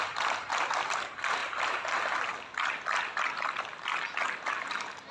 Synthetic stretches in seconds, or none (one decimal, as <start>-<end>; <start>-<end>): none